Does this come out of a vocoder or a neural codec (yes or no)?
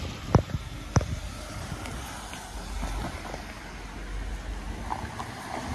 no